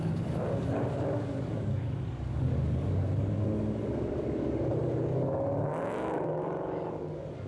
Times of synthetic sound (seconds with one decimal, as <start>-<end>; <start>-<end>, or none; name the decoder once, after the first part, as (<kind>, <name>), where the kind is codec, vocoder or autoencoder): 0.0-7.5 (codec, DAC)